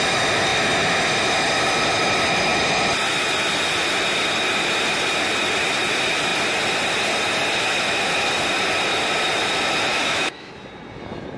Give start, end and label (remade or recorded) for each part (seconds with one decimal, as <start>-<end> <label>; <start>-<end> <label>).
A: 0.0-9.9 recorded; 9.9-10.5 remade; 10.5-11.4 recorded